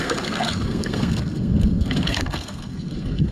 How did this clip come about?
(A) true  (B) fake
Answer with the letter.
B